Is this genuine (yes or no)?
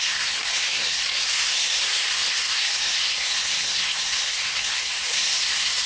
no